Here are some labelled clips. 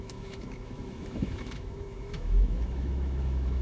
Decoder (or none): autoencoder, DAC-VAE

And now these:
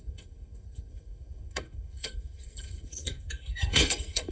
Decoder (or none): codec, SNAC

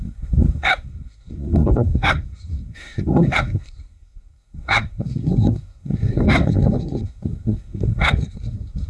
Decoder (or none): codec, SNAC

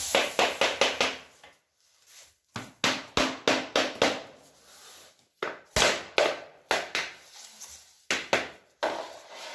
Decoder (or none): none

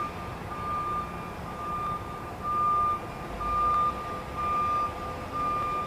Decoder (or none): none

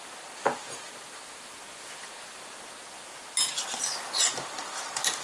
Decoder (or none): none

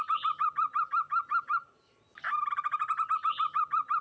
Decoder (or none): none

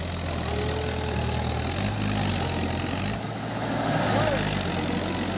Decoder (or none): none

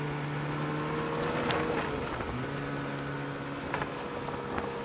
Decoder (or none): none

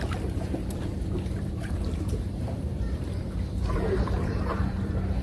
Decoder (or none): vocoder, BigVGAN v2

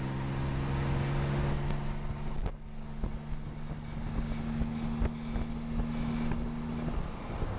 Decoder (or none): none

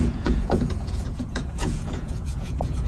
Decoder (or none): vocoder, Vocos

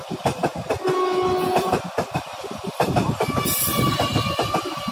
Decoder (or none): none